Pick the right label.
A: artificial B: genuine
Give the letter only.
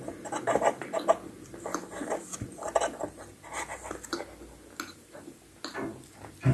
B